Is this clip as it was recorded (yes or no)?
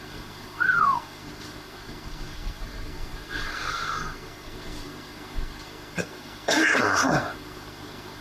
no